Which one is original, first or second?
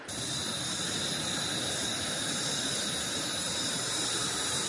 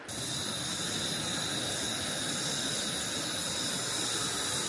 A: second